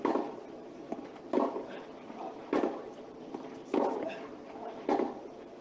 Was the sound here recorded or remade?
recorded